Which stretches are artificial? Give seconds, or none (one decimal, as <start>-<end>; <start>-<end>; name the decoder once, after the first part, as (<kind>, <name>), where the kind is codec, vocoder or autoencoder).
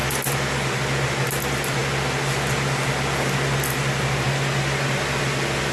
none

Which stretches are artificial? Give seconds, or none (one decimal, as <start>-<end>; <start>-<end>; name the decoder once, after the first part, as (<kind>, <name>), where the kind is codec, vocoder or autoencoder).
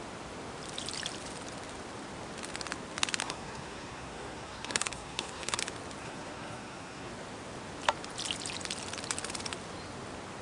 3.2-5.6 (codec, SNAC); 6.0-7.1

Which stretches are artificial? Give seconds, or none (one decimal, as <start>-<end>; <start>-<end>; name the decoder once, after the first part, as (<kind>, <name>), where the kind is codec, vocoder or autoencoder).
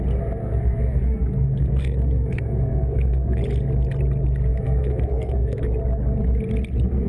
0.4-3.4 (codec, SNAC); 4.5-5.6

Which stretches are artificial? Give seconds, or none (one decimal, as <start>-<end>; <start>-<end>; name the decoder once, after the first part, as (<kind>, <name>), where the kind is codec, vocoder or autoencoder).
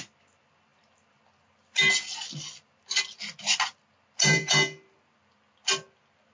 none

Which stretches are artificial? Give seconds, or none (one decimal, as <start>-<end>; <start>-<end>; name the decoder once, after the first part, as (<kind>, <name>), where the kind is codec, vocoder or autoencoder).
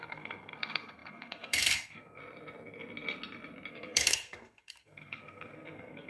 0.0-2.2 (codec, SNAC); 3.7-6.1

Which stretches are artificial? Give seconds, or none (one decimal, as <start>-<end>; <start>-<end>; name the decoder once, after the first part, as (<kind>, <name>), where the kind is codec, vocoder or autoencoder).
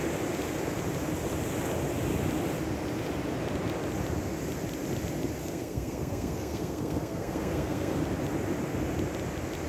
5.4-8.0 (codec, SNAC)